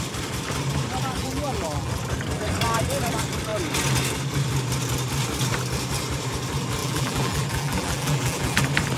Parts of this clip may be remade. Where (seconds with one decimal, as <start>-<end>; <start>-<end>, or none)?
1.2-1.9; 6.8-8.6